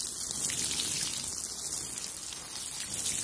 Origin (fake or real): real